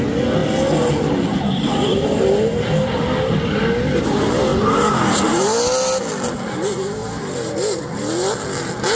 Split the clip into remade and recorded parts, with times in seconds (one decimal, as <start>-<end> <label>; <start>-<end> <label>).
0.0-9.0 recorded